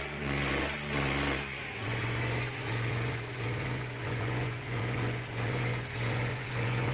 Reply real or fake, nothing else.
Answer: fake